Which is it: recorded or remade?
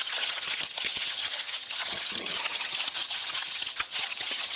remade